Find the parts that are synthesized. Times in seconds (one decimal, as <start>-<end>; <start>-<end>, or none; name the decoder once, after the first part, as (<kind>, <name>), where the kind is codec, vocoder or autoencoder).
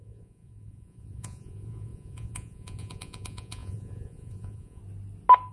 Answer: 0.0-4.8 (vocoder, Vocos)